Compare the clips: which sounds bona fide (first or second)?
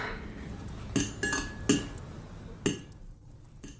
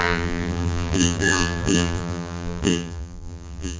first